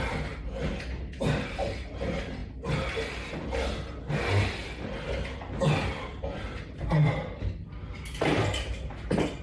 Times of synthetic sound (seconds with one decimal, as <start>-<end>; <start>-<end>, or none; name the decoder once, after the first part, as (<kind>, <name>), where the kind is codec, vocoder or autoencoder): none